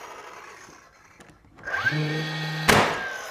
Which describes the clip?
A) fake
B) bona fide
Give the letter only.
B